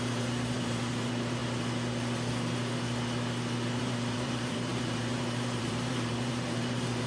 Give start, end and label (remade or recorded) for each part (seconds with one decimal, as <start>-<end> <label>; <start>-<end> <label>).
0.0-1.4 remade; 1.4-3.8 recorded; 3.8-7.1 remade

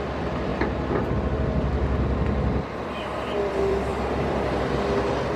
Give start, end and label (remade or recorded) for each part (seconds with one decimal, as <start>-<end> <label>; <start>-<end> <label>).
0.0-0.5 remade; 0.5-2.8 recorded; 2.8-5.4 remade